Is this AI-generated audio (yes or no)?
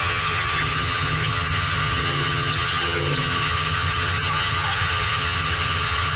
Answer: yes